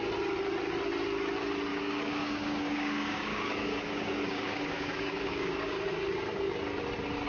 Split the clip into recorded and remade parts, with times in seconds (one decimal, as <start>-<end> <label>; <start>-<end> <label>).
0.0-1.7 recorded; 1.7-5.7 remade; 5.7-7.3 recorded